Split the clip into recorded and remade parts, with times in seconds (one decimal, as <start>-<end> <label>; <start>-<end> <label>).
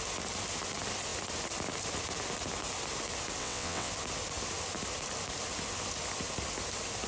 0.0-3.4 recorded; 3.4-3.9 remade; 3.9-7.1 recorded